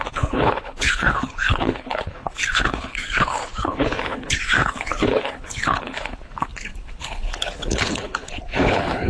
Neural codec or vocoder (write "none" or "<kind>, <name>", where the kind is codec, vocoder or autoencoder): codec, HILCodec